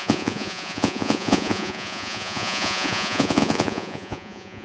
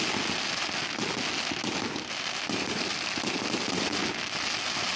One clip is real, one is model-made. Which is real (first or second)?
second